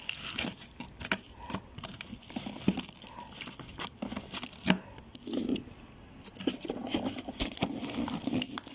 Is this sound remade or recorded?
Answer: recorded